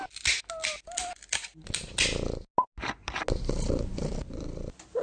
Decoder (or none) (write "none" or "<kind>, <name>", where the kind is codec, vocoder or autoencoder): none